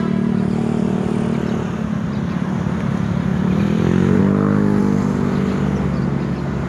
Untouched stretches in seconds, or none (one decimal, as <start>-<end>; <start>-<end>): 0.0-3.3; 4.2-6.7